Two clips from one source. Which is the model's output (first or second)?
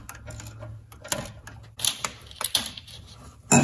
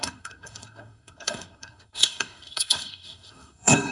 second